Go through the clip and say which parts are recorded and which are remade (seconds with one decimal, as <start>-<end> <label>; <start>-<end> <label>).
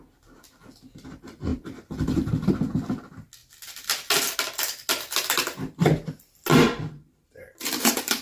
0.0-6.5 recorded; 6.5-8.2 remade